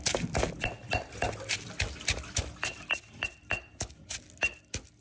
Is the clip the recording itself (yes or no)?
yes